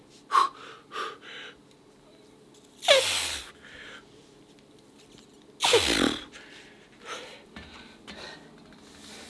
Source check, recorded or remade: recorded